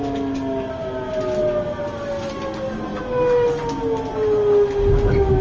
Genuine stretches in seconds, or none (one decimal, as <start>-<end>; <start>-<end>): 0.0-5.4